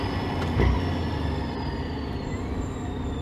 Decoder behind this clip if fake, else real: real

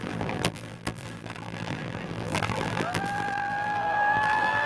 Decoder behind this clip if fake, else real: fake, vocoder, BigVGAN v2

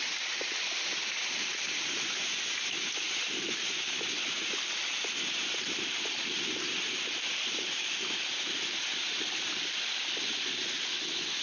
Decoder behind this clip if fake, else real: real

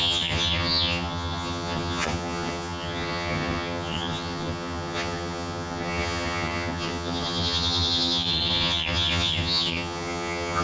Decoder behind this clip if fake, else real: fake, vocoder, HiFi-GAN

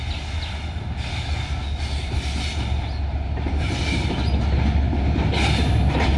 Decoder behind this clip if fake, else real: real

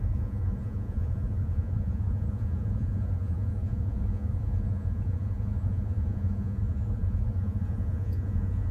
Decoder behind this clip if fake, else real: fake, vocoder, Vocos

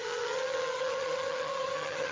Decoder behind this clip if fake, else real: fake, vocoder, HiFi-GAN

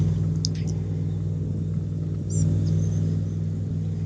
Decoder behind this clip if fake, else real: real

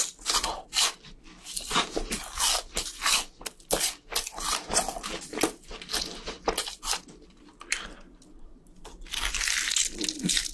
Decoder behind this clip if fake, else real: real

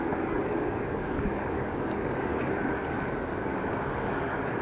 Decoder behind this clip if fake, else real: fake, codec, DAC